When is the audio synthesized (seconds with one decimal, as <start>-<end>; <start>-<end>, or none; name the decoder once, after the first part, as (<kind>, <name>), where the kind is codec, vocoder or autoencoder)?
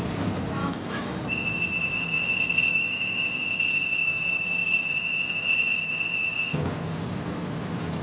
0.6-1.2 (autoencoder, DAC-VAE); 2.7-3.3